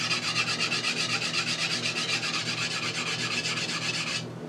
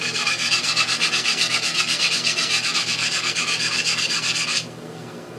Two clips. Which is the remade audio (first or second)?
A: second